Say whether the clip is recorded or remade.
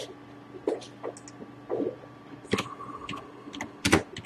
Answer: recorded